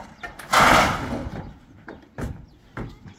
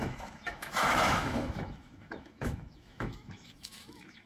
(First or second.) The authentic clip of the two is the first